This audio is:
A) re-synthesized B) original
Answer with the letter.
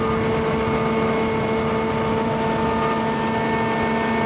B